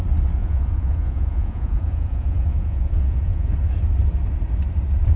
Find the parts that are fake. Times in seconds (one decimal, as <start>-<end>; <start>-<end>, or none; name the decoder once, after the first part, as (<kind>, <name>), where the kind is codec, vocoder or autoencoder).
0.4-3.5 (vocoder, Vocos)